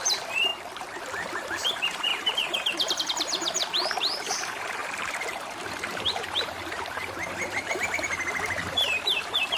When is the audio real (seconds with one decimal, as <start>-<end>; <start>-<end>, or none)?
none